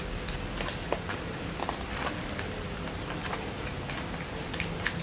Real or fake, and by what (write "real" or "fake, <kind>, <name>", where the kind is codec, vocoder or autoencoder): real